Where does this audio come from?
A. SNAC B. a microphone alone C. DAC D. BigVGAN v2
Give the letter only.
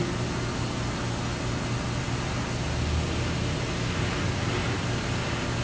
B